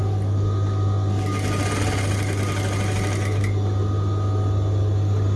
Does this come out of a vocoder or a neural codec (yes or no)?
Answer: no